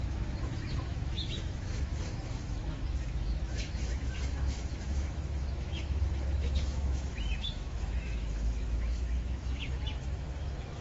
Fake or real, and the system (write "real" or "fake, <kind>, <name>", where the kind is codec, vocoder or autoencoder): fake, autoencoder, DAC-VAE